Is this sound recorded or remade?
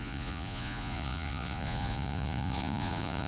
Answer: remade